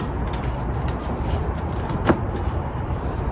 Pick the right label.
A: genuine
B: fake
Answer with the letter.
B